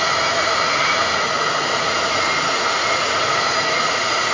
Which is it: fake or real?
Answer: fake